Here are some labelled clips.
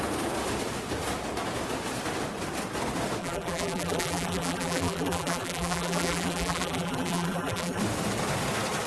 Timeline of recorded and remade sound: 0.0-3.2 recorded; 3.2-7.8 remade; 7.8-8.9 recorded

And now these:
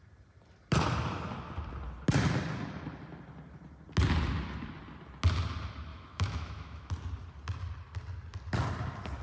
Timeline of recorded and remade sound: 0.0-5.9 recorded; 5.9-6.9 remade; 6.9-9.2 recorded

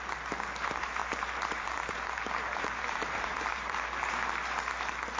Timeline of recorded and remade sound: 0.0-1.0 recorded; 1.0-4.1 remade; 4.1-5.2 recorded